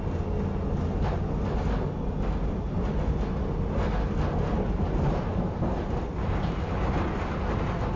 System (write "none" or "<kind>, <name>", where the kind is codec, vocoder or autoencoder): none